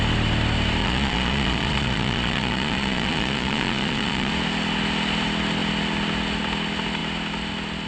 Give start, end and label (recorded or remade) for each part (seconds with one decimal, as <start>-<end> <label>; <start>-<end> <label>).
0.0-0.8 recorded; 0.8-4.3 remade; 4.3-7.9 recorded